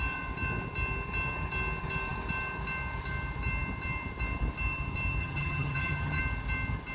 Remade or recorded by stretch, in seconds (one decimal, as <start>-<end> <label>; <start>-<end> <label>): 0.0-5.2 recorded; 5.2-6.2 remade; 6.2-6.9 recorded